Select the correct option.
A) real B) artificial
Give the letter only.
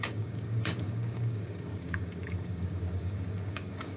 B